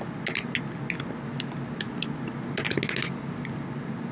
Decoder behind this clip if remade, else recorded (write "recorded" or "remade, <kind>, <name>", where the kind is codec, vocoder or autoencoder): recorded